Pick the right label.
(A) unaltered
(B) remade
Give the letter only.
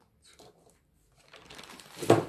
A